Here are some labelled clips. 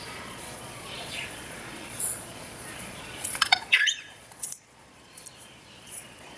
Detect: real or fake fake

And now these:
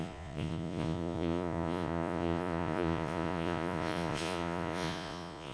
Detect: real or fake fake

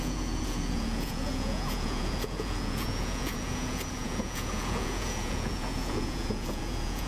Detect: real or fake fake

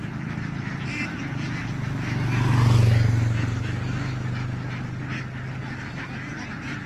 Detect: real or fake real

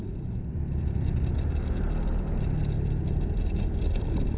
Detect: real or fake real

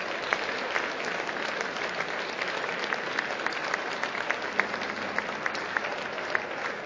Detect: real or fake real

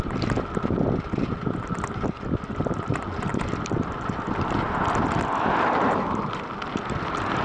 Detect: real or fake real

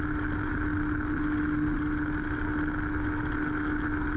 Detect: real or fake real